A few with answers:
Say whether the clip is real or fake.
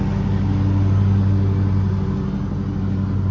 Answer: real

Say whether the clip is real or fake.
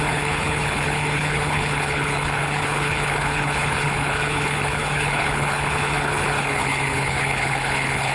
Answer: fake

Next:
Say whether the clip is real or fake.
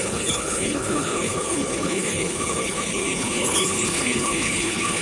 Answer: fake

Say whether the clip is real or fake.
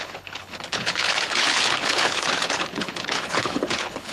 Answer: fake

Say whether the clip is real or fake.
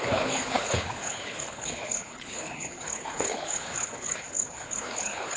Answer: fake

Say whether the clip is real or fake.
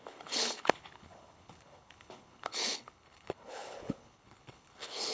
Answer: fake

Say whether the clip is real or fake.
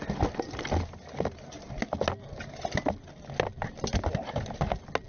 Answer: real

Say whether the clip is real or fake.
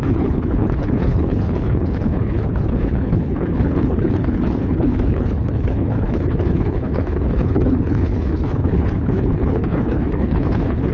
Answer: fake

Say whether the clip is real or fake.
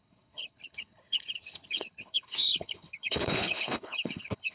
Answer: fake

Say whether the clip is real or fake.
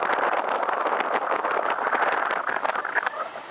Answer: real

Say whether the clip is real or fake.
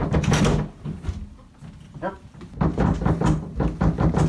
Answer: real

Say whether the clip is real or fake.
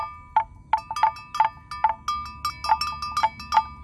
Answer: real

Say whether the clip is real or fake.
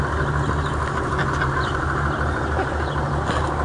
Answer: real